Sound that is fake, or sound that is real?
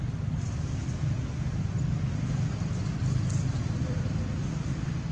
real